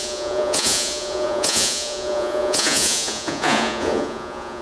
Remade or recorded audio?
remade